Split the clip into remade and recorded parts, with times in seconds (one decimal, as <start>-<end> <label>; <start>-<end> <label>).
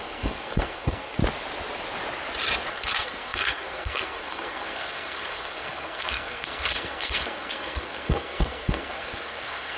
0.0-1.2 remade; 1.2-2.7 recorded; 2.7-9.8 remade